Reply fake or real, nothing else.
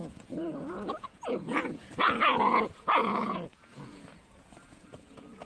fake